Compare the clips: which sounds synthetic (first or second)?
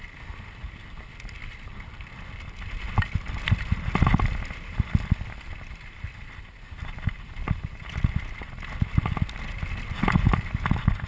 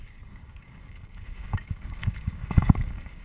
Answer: second